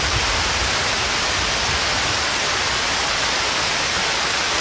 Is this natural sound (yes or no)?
yes